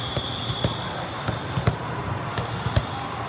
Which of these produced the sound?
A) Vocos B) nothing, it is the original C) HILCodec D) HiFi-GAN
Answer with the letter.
B